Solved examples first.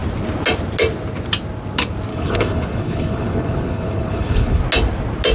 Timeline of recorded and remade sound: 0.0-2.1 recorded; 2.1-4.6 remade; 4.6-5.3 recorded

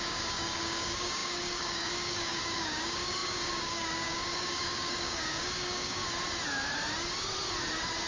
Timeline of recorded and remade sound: 0.0-6.0 remade; 6.0-8.1 recorded

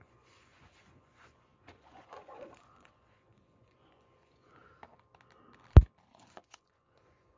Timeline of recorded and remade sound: 0.0-4.6 remade; 4.6-6.1 recorded; 6.1-7.4 remade

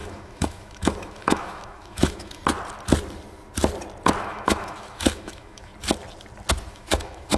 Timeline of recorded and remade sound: 0.0-2.4 remade; 2.4-4.2 recorded; 4.2-5.7 remade; 5.7-6.7 recorded; 6.7-7.4 remade

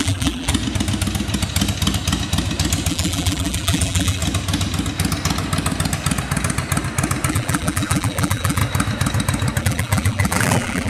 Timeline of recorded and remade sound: 0.0-0.5 remade; 0.5-2.9 recorded; 2.9-4.2 remade; 4.2-7.3 recorded; 7.3-8.6 remade; 8.6-9.6 recorded; 9.6-10.9 remade

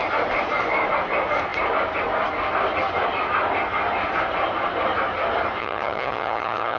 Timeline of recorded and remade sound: 0.0-5.6 recorded; 5.6-6.8 remade

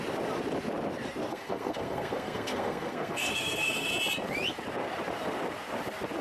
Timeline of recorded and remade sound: 0.0-1.3 recorded; 1.3-3.9 remade; 3.9-6.2 recorded